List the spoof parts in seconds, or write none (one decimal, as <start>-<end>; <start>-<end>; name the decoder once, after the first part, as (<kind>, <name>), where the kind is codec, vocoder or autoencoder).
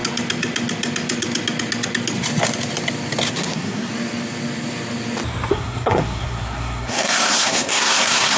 3.3-3.9 (codec, SNAC); 5.5-8.4